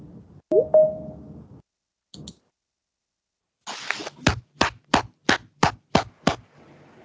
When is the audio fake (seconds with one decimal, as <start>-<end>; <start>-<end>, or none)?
none